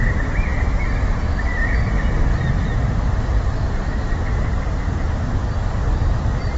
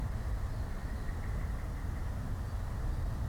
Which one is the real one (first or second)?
second